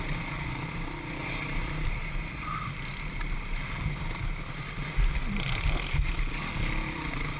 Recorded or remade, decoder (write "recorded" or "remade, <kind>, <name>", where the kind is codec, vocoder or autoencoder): recorded